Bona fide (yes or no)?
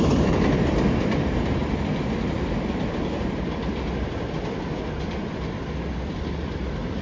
yes